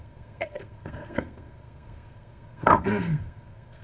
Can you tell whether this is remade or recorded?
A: remade